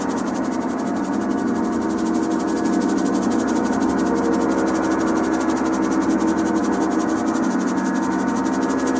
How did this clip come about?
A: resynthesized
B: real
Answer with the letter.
B